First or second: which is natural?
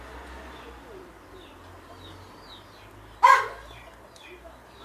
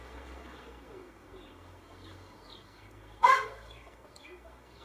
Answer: first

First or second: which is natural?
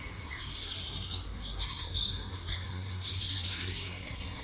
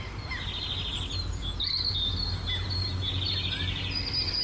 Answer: second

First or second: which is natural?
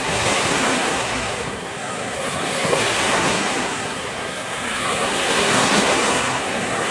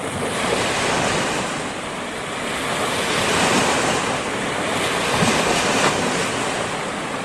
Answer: second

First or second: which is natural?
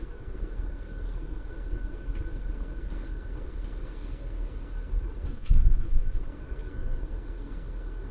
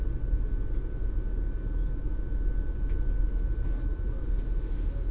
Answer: second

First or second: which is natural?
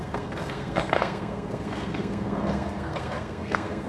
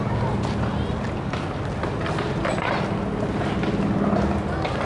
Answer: second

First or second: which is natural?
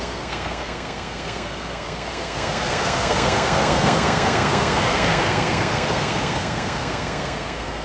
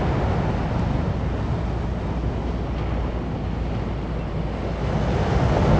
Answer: second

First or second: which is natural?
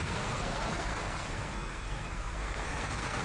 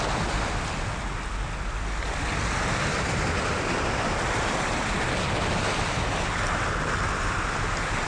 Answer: second